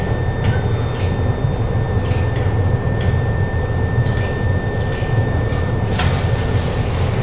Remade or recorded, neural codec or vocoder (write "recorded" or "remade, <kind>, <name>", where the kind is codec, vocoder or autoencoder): recorded